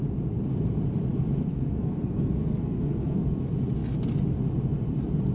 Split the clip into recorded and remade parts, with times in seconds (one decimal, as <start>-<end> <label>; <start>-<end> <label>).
0.0-1.5 recorded; 1.5-3.3 remade; 3.3-5.3 recorded